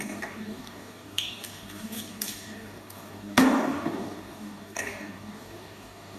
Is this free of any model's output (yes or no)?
no